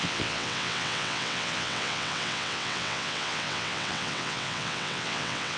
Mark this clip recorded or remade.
remade